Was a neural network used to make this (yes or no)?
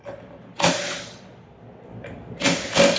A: no